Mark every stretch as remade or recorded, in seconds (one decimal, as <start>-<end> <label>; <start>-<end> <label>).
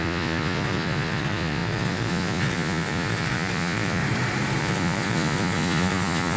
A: 0.0-4.0 remade; 4.0-4.6 recorded; 4.6-6.4 remade